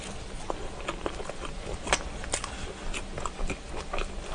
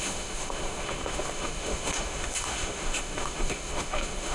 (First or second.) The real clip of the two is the first